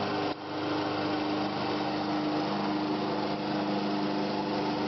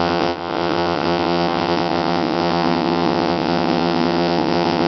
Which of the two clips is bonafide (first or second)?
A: first